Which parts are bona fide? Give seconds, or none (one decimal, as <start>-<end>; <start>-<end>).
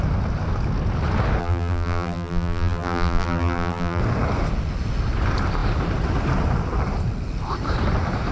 0.0-1.4; 4.0-8.3